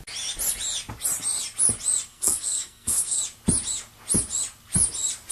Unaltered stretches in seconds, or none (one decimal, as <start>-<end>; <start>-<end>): 0.0-2.1; 3.2-5.3

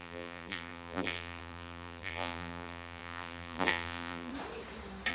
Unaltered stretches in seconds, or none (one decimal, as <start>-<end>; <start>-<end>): 4.3-5.1